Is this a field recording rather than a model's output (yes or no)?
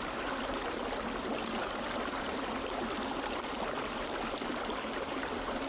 yes